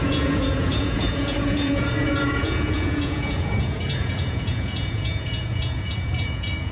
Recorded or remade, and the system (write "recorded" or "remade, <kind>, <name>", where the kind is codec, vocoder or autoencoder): remade, vocoder, Vocos